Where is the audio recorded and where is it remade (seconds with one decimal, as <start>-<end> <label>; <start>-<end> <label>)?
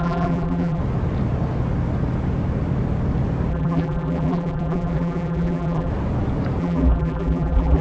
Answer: 0.0-0.8 remade; 0.8-3.5 recorded; 3.5-5.9 remade; 5.9-6.6 recorded; 6.6-7.8 remade